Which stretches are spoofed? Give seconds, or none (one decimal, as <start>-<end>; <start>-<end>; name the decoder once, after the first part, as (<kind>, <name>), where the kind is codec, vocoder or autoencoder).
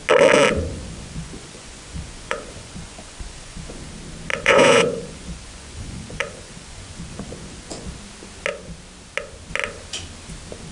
0.7-3.9 (vocoder, Vocos); 4.3-7.9